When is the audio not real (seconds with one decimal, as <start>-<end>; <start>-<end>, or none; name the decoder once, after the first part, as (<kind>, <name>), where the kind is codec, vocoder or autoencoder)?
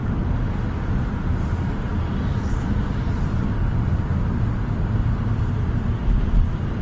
none